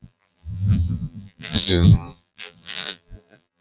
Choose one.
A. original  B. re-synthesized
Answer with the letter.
B